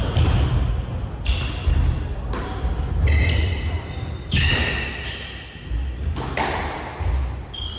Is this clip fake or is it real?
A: real